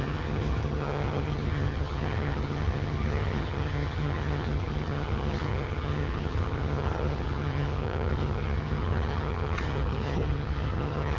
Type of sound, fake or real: fake